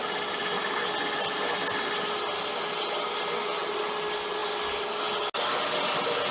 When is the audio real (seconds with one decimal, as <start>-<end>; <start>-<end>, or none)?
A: 0.0-6.3